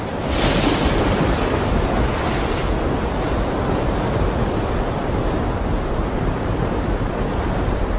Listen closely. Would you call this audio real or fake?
real